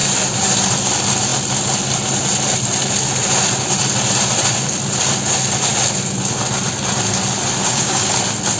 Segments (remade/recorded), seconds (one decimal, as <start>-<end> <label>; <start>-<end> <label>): 0.0-7.6 recorded; 7.6-8.1 remade; 8.1-8.6 recorded